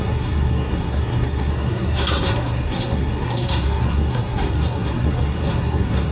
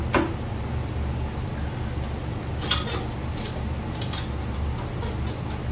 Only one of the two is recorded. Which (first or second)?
second